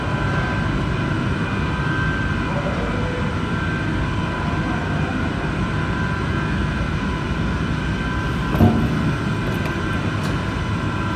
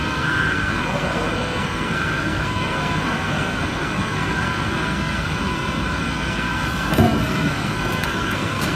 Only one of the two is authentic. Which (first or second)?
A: first